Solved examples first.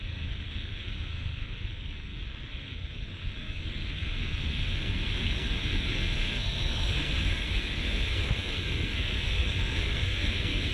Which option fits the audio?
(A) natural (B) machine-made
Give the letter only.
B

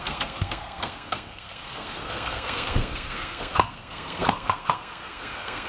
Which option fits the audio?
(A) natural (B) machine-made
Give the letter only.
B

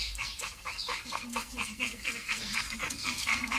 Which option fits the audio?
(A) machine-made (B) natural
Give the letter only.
A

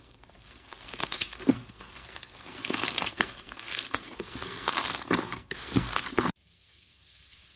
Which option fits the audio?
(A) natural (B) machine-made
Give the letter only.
B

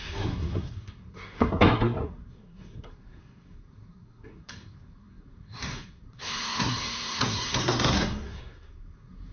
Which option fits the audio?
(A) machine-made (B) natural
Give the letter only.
A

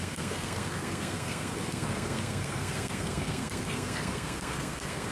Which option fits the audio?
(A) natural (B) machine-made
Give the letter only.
B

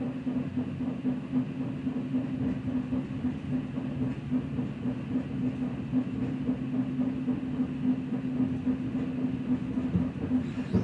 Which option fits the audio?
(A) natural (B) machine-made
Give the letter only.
A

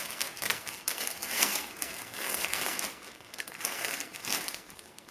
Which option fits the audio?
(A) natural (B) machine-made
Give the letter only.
B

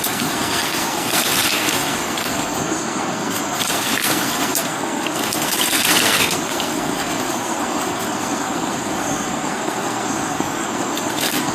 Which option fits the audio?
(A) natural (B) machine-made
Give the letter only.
B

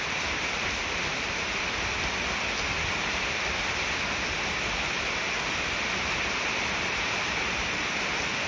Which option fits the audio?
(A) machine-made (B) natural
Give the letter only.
B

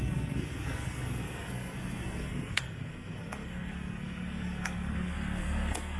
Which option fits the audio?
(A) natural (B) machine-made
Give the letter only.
B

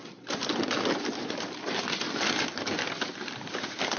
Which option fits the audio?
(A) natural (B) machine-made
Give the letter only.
A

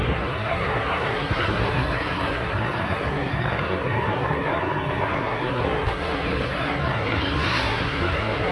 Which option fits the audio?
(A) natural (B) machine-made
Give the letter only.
B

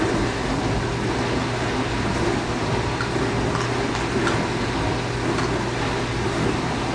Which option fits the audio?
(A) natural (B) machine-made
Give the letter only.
A